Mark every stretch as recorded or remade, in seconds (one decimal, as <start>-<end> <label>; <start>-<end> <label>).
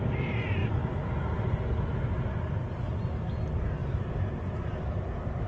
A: 0.0-3.8 recorded; 3.8-4.3 remade; 4.3-5.5 recorded